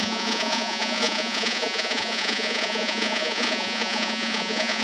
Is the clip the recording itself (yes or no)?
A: no